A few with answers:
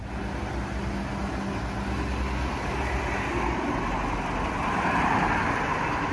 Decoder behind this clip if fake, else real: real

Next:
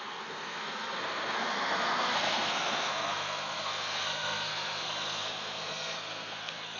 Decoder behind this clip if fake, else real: fake, codec, SNAC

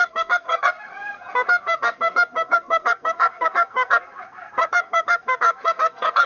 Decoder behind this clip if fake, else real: fake, codec, SNAC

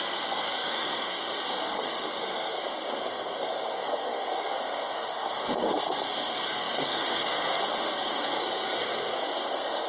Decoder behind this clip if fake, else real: fake, codec, SNAC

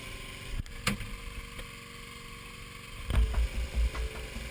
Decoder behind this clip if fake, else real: real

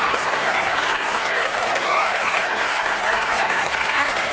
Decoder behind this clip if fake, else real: fake, codec, SNAC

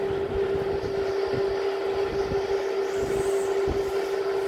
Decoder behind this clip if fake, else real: real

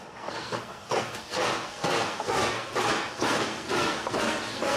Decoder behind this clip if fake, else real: fake, codec, SNAC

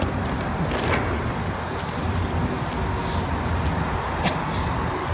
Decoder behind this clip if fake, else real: real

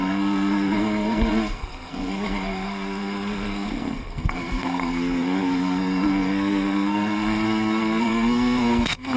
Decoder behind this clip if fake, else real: fake, codec, SNAC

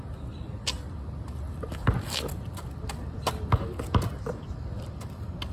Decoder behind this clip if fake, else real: real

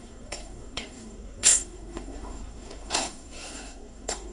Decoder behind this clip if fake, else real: fake, codec, SNAC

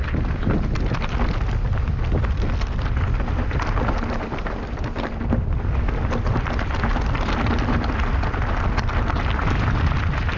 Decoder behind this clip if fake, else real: real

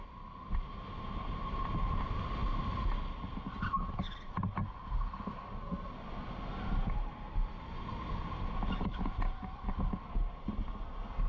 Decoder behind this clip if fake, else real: real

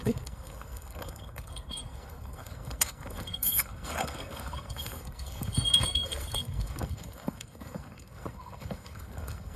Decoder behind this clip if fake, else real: fake, codec, SNAC